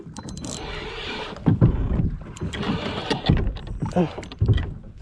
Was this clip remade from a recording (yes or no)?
no